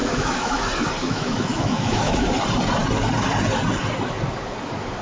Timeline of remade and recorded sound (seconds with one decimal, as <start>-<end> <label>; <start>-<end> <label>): 0.0-0.6 remade; 0.6-1.0 recorded; 1.0-2.3 remade; 2.3-5.0 recorded